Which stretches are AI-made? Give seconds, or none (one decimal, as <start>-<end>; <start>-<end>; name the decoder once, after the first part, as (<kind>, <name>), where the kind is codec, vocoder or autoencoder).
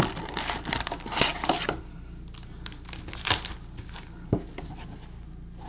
none